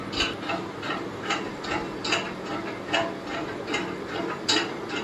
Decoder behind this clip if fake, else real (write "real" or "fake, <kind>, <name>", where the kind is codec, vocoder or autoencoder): real